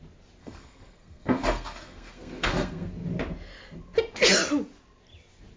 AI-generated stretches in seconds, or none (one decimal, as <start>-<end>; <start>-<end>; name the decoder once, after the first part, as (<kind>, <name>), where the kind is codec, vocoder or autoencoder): 0.4-2.9 (codec, SNAC)